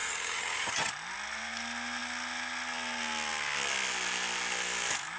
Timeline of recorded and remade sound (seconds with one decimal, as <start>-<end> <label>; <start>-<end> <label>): 0.0-0.9 remade; 0.9-5.2 recorded